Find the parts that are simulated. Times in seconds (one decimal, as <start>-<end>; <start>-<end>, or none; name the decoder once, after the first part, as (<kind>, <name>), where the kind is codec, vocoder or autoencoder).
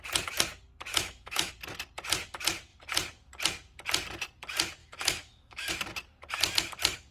0.9-1.5 (autoencoder, DAC-VAE); 4.8-5.7